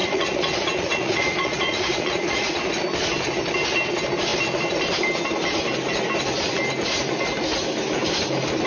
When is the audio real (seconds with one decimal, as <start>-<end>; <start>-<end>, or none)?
2.6-8.7